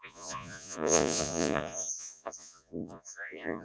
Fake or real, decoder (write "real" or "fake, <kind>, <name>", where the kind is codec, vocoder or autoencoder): fake, vocoder, Vocos